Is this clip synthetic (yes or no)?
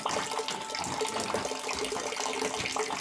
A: no